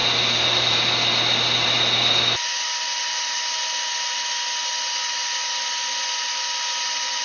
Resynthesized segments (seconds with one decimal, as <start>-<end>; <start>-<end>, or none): none